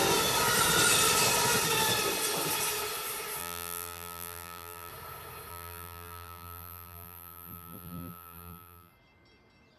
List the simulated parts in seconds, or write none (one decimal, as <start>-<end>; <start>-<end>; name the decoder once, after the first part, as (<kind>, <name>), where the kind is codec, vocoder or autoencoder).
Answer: 3.4-4.9 (vocoder, BigVGAN v2); 5.5-8.9